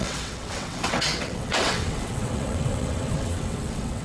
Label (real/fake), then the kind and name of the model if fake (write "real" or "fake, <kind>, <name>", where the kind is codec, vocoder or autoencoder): fake, vocoder, WaveNeXt